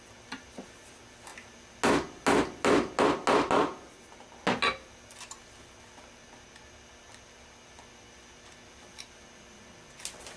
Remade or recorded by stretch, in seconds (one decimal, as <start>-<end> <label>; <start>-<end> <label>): 0.0-10.4 recorded